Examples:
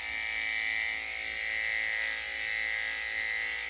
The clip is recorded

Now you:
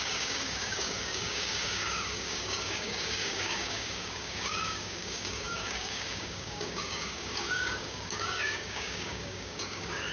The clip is remade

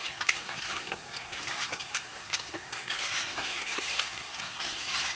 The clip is remade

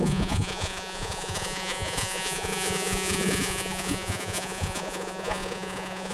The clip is remade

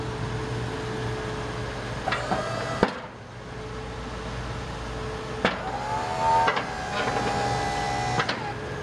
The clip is recorded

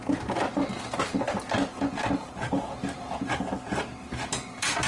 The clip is recorded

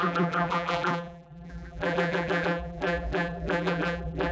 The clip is remade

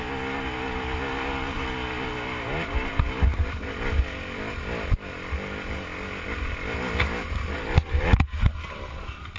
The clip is recorded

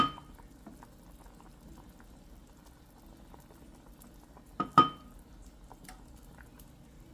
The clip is recorded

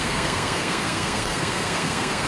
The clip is remade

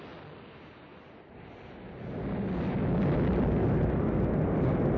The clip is recorded